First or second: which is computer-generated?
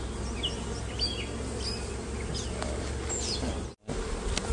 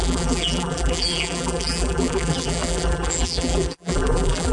second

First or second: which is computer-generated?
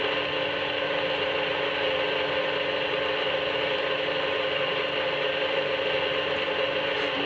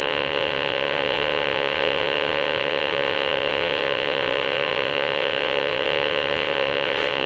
second